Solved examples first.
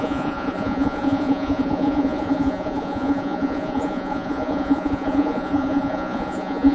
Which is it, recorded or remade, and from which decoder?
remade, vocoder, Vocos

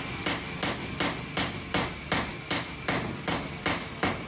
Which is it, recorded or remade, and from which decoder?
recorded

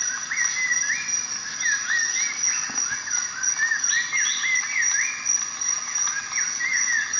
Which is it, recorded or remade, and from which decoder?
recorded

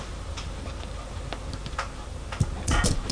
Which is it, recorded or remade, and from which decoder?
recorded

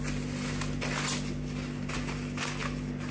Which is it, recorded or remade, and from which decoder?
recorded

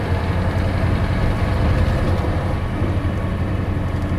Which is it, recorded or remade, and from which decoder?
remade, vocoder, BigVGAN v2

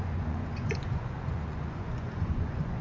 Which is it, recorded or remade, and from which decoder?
remade, vocoder, Vocos